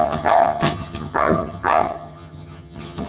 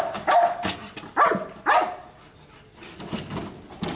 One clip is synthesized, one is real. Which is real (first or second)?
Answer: second